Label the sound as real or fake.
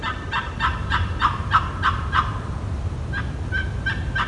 real